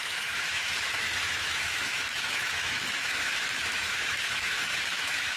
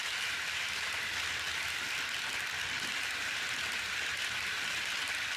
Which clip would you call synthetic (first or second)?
first